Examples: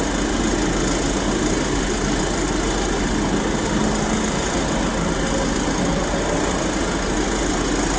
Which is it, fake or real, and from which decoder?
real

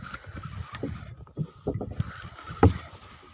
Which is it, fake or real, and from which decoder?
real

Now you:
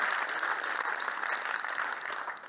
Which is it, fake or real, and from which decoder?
real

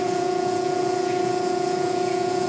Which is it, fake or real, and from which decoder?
fake, vocoder, Vocos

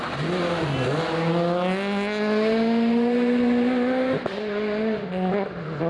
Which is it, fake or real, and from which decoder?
real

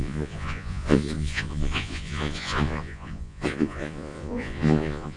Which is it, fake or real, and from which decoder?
fake, vocoder, Vocos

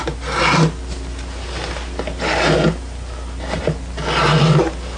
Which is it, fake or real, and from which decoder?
real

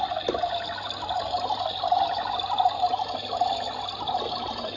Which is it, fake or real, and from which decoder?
real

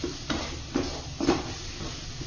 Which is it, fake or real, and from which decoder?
real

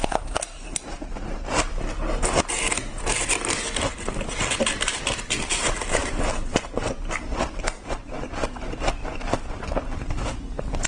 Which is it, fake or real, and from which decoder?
real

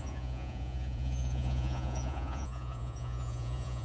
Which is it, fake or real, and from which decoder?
fake, vocoder, Vocos